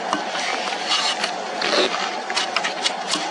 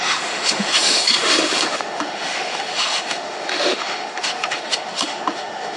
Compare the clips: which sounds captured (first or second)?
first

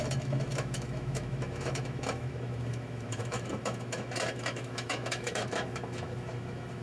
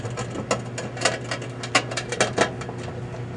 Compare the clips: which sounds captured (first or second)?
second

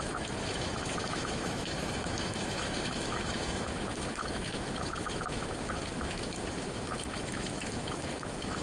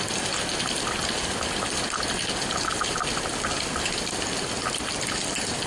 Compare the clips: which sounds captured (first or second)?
second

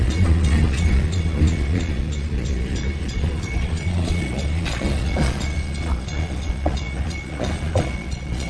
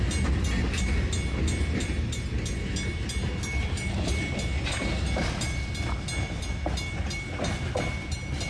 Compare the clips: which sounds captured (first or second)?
second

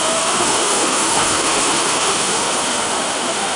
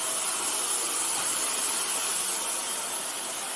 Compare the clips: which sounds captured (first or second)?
second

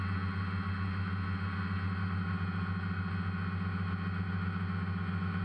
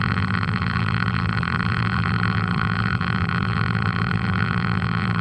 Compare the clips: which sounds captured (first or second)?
first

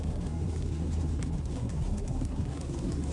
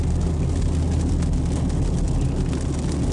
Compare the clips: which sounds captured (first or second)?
second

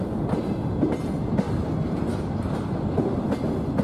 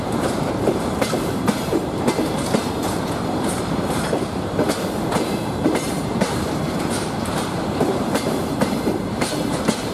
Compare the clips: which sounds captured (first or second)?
first